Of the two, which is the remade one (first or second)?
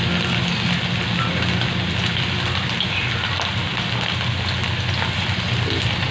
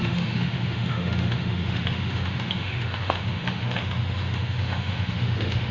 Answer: second